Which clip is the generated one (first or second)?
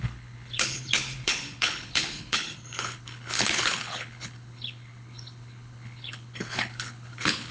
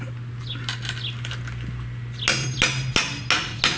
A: first